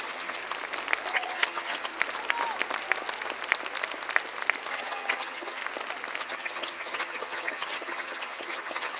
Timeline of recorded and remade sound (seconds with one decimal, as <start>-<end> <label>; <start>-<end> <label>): 0.0-0.4 remade; 0.4-1.1 recorded; 1.1-1.9 remade; 1.9-4.7 recorded; 4.7-5.6 remade; 5.6-6.2 recorded; 6.2-9.0 remade